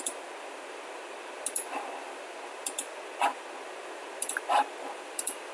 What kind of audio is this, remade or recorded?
remade